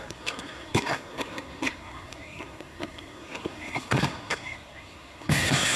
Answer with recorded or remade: remade